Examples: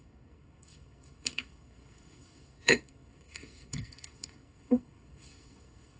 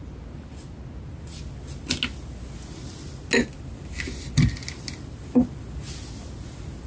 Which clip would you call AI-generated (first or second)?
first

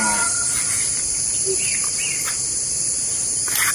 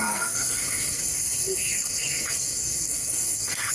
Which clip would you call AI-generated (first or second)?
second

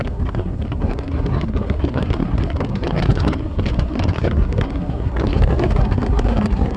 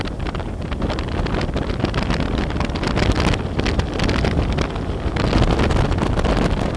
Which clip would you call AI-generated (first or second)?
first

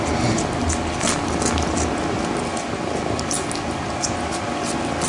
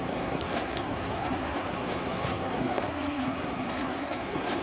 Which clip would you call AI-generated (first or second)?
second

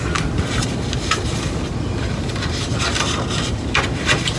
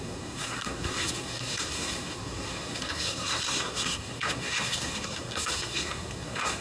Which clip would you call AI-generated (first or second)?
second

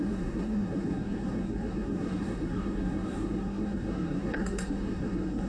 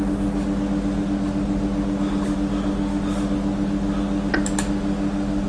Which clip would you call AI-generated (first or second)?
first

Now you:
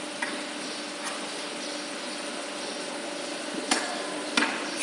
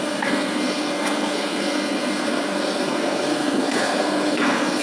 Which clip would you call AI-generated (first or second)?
second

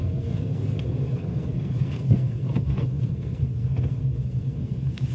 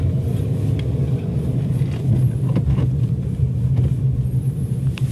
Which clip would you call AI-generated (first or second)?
first